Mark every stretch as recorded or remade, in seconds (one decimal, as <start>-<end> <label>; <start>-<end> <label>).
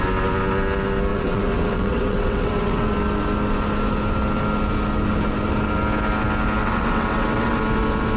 0.0-1.1 recorded; 1.1-2.9 remade; 2.9-6.6 recorded; 6.6-7.6 remade; 7.6-8.2 recorded